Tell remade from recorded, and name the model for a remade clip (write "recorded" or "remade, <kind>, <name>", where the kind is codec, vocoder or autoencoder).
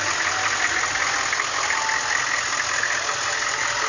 recorded